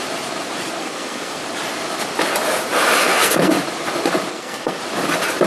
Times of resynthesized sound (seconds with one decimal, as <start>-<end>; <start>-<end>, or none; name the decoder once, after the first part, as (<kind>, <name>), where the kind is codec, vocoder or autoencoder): 0.8-1.4 (codec, SNAC); 3.0-3.5; 4.3-4.8